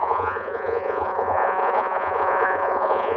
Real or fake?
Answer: fake